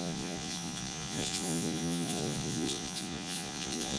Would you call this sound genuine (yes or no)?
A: no